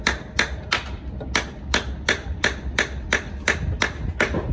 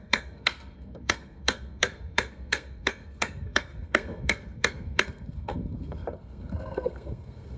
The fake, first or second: second